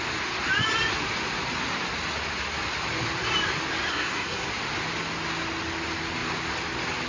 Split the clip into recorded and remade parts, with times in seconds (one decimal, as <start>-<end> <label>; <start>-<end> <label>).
0.0-3.9 recorded; 3.9-4.5 remade; 4.5-7.1 recorded